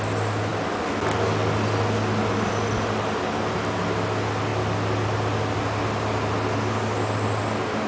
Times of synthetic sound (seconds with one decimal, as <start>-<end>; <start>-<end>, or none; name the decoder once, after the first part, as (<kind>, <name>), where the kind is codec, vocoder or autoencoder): none